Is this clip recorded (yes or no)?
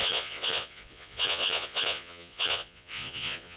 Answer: no